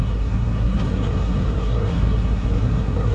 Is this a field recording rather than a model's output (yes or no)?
no